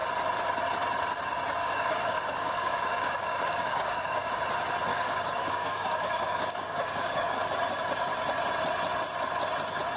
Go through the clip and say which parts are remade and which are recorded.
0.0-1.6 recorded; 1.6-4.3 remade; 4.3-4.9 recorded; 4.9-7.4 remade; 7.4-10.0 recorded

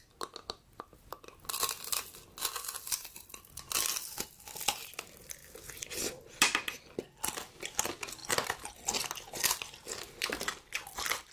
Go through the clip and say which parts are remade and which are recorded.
0.0-11.3 recorded

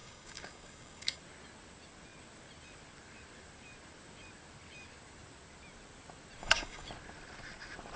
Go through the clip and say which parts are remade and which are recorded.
0.0-1.2 remade; 1.2-6.4 recorded; 6.4-6.9 remade; 6.9-8.0 recorded

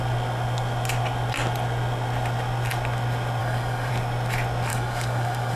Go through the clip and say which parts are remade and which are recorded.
0.0-3.4 recorded; 3.4-3.9 remade; 3.9-4.7 recorded; 4.7-5.6 remade

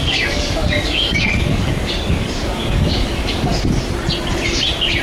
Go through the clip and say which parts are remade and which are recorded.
0.0-3.5 remade; 3.5-5.0 recorded

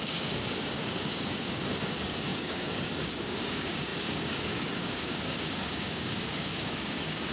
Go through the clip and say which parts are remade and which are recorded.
0.0-7.3 remade

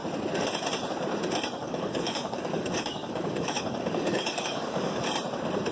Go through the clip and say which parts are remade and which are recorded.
0.0-1.6 recorded; 1.6-5.0 remade; 5.0-5.7 recorded